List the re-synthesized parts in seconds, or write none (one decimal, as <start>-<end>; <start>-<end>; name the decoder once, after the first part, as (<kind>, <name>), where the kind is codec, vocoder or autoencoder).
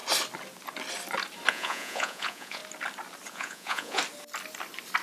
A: 1.5-2.6 (vocoder, Vocos); 3.3-4.0